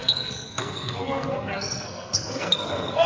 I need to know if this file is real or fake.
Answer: fake